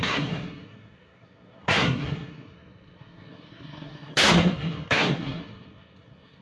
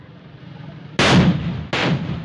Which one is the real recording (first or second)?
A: second